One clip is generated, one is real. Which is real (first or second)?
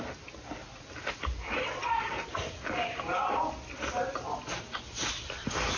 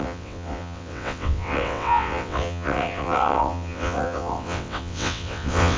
first